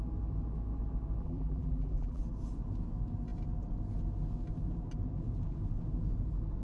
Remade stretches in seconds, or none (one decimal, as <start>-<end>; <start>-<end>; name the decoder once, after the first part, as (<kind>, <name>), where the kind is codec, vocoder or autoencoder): 1.2-2.2 (vocoder, BigVGAN v2)

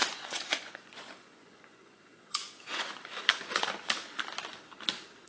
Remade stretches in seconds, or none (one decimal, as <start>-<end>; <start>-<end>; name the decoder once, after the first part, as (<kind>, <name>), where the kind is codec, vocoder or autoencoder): 0.0-3.2 (vocoder, Vocos)